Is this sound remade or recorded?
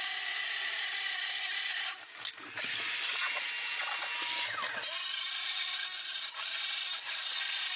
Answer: recorded